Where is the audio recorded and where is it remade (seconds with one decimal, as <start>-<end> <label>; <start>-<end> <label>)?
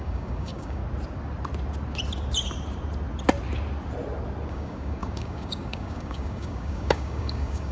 0.0-0.8 remade; 0.8-4.5 recorded; 4.5-7.7 remade